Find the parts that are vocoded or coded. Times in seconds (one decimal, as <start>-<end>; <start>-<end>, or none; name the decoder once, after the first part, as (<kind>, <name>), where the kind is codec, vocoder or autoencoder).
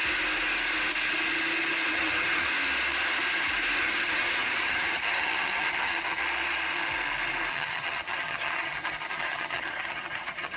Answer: 1.9-2.5 (vocoder, HiFi-GAN); 3.8-6.2; 7.5-10.6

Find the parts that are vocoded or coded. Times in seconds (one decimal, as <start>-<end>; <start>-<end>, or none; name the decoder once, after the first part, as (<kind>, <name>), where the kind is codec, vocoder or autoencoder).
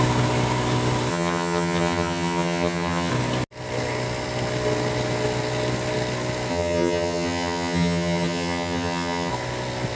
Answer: 1.1-3.1 (vocoder, HiFi-GAN); 6.5-9.3